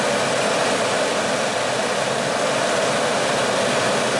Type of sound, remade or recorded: recorded